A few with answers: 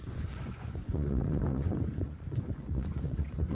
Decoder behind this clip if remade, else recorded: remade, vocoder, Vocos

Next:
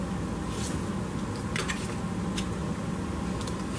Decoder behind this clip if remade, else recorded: recorded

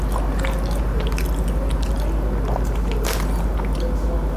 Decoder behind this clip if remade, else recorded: recorded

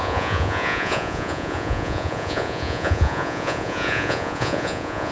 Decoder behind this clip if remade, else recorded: remade, vocoder, Vocos